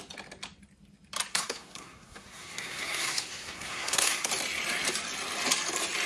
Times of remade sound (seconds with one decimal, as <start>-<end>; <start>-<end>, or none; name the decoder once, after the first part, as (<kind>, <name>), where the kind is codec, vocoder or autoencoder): 1.3-4.3 (codec, SNAC)